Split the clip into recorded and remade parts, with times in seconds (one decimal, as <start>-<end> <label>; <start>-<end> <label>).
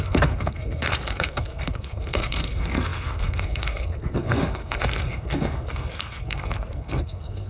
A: 0.0-7.5 remade